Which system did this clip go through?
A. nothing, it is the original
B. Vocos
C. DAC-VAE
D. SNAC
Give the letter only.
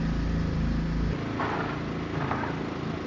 A